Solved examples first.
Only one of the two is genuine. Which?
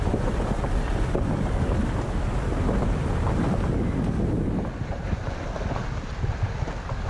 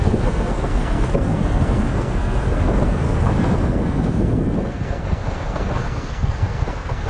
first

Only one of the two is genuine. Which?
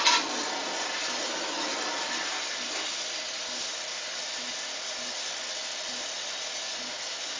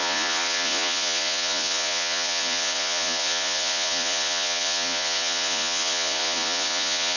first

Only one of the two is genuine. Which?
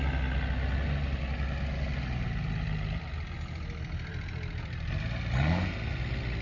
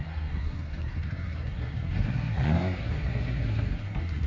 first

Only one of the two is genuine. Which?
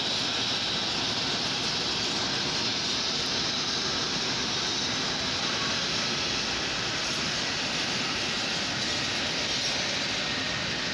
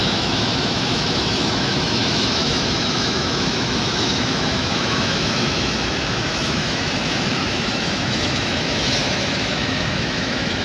first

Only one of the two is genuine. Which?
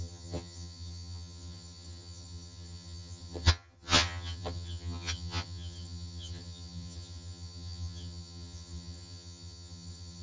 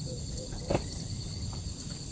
second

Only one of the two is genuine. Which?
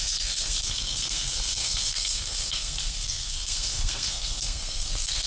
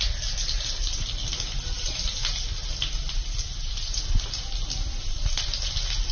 second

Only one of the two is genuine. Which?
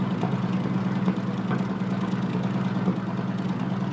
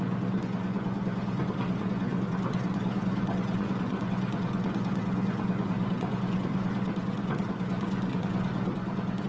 first